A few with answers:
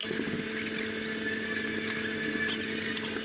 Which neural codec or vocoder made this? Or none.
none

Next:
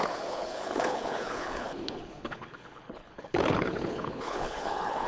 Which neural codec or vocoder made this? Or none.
codec, HILCodec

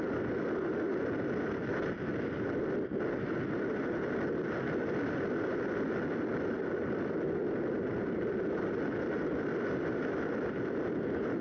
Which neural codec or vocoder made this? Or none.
none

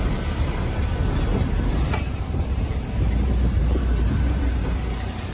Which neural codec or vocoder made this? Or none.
vocoder, BigVGAN v2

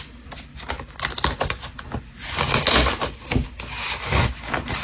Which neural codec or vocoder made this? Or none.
none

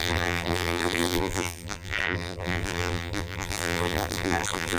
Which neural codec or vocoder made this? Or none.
vocoder, BigVGAN v2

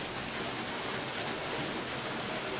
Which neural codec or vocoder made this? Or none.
none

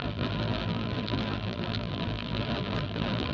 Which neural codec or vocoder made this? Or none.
vocoder, BigVGAN v2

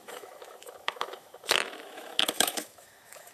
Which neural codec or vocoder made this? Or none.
autoencoder, DAC-VAE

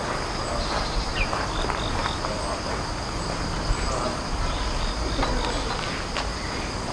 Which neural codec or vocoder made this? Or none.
none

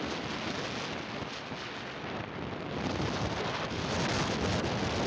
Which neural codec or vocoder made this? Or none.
none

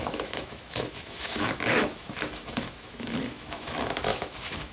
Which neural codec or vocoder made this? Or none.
autoencoder, DAC-VAE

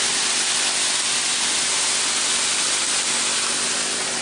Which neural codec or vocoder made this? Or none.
none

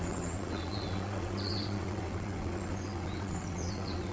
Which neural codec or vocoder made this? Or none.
vocoder, WaveNeXt